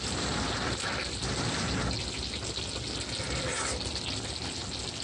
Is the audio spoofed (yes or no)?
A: no